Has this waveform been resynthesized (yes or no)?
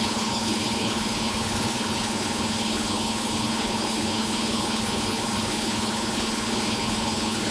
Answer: yes